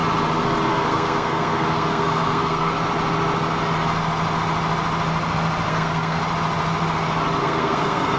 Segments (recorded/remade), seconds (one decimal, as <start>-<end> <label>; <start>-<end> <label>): 0.0-0.7 recorded; 0.7-2.7 remade; 2.7-5.7 recorded; 5.7-6.2 remade; 6.2-7.4 recorded; 7.4-8.2 remade